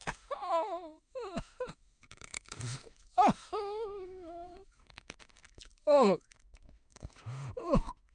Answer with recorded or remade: remade